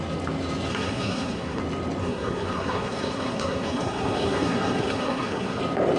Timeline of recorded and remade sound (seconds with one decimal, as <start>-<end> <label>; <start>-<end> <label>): 0.0-0.7 recorded; 0.7-1.6 remade; 1.6-2.0 recorded; 2.0-5.6 remade; 5.6-6.0 recorded